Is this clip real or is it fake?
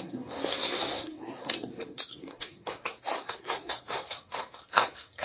fake